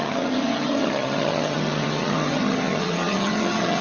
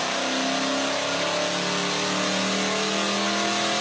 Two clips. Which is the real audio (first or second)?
second